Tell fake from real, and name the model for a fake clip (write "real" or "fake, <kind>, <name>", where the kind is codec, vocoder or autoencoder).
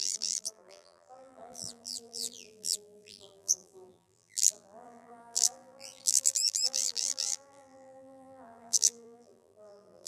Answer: fake, vocoder, BigVGAN v2